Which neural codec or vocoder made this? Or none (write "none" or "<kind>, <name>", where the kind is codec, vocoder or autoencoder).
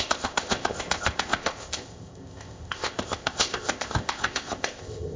codec, ZipCodec